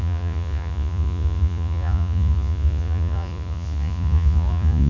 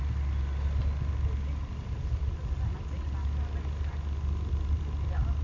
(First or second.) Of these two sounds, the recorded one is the second